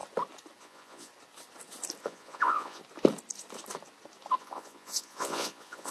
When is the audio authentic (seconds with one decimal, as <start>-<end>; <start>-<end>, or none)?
0.0-0.6; 1.1-2.0; 2.8-4.4